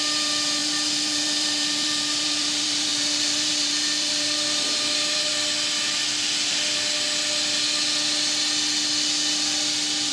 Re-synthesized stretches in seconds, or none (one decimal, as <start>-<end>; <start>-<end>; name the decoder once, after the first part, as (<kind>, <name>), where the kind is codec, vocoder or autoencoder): 0.0-5.3 (vocoder, BigVGAN v2)

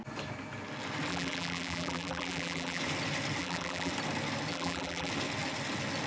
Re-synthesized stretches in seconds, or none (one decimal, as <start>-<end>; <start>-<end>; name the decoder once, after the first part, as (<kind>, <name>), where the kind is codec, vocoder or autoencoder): 1.1-2.8 (vocoder, BigVGAN v2); 3.4-3.9; 4.5-5.1

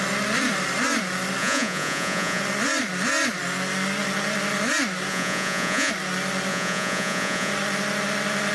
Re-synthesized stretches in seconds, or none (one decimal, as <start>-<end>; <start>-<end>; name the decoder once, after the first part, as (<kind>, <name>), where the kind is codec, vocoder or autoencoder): 1.4-2.4 (vocoder, Vocos); 5.1-5.9; 6.5-7.5

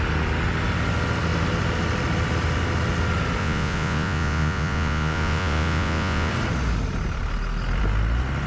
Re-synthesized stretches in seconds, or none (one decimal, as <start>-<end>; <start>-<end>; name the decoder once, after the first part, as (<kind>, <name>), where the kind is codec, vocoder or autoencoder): 3.4-6.3 (vocoder, Vocos)

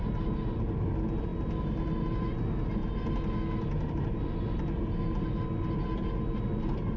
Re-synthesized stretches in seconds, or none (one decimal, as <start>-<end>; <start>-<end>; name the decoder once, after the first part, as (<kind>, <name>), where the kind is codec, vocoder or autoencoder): none